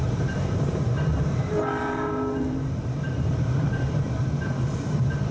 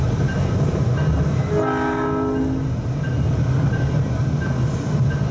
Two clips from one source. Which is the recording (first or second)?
second